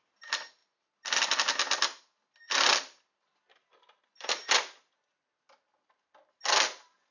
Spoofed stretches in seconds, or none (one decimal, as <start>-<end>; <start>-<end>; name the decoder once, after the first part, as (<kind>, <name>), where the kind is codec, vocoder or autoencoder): none